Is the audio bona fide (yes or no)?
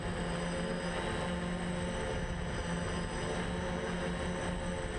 yes